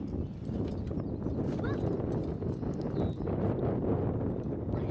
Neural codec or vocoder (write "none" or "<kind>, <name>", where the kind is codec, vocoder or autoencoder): none